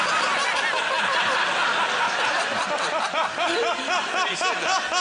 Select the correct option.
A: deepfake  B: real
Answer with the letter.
B